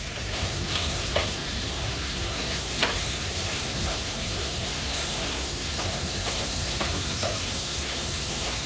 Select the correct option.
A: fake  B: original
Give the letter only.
A